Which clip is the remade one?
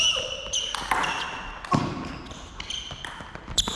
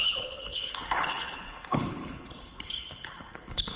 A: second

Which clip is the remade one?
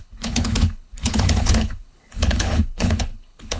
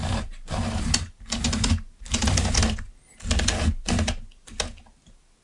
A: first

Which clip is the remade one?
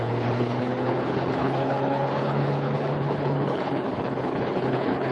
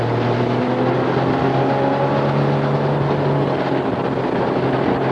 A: first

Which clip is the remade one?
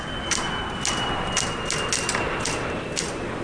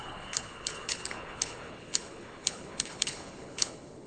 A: second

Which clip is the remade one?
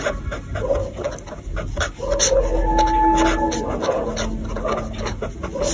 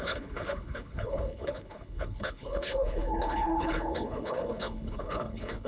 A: second